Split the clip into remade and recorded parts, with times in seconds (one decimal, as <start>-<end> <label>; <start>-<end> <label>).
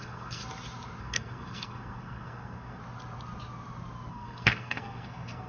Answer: 0.0-0.4 remade; 0.4-1.0 recorded; 1.0-2.8 remade; 2.8-4.1 recorded; 4.1-5.5 remade